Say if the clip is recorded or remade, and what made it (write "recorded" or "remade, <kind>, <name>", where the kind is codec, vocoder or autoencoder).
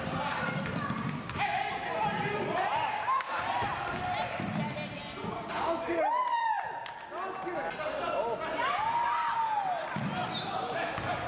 recorded